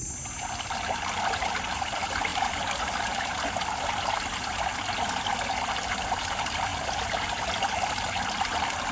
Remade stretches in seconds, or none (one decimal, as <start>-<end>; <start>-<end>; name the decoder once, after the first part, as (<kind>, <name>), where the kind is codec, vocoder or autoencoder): none